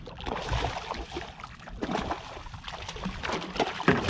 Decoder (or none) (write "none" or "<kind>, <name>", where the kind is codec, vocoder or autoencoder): none